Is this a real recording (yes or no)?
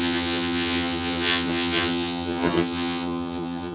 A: no